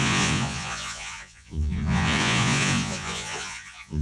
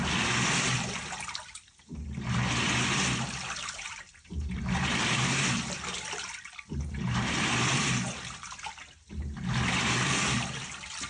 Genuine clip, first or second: second